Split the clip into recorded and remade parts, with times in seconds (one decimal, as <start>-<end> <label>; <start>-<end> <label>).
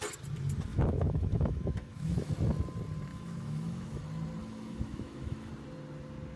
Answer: 0.0-0.7 recorded; 0.7-2.3 remade; 2.3-3.1 recorded; 3.1-4.0 remade; 4.0-4.4 recorded; 4.4-5.5 remade; 5.5-6.4 recorded